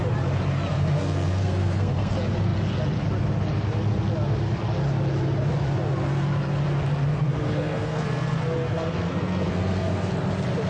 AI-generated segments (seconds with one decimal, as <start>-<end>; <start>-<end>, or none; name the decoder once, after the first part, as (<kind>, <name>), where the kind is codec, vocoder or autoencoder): 0.7-2.1 (codec, SNAC); 7.1-10.1